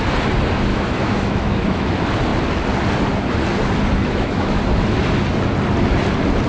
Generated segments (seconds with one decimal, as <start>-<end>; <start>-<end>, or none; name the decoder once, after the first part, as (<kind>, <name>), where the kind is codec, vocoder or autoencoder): 0.7-1.9 (autoencoder, DAC-VAE); 4.0-4.6